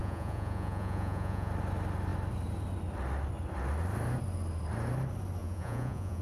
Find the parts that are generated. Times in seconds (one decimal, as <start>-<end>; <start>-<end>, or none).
0.0-1.5; 5.4-6.2